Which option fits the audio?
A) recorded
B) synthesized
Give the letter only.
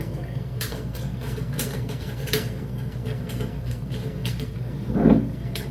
B